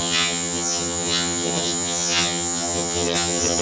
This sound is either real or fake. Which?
fake